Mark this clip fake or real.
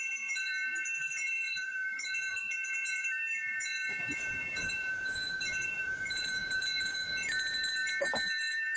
fake